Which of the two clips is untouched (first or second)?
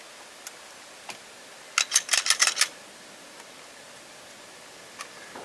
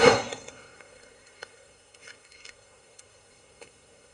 first